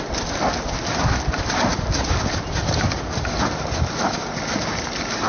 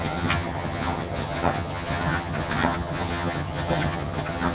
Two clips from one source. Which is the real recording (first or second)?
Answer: first